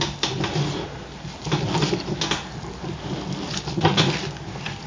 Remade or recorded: recorded